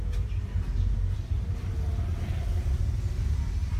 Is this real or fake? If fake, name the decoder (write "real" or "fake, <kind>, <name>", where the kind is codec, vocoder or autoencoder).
real